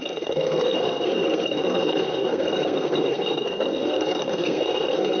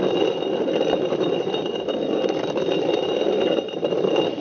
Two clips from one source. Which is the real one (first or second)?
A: second